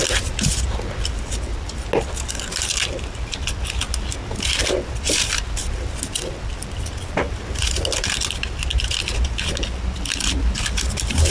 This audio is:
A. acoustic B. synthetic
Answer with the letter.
A